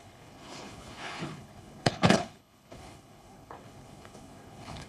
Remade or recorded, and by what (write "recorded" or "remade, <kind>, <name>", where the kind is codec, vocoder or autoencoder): remade, codec, HILCodec